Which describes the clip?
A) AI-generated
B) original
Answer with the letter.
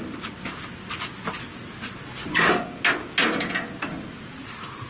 B